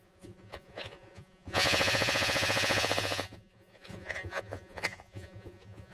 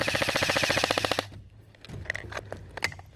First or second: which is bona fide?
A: second